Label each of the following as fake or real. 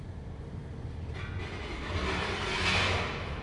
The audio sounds real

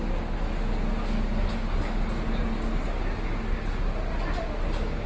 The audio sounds real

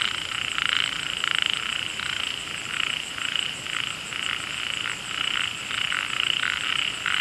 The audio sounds real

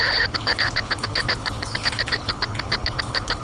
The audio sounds fake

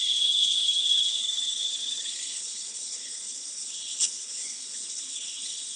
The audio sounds fake